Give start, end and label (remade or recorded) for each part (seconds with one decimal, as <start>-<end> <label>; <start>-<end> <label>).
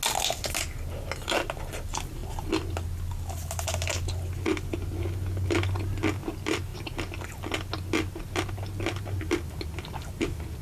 0.0-10.6 recorded